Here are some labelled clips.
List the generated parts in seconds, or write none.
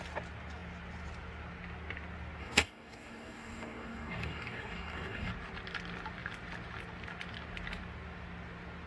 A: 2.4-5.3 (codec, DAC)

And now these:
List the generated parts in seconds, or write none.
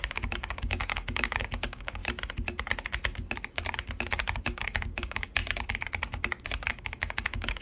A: 0.0-2.0 (codec, DAC); 4.4-5.4; 6.7-7.6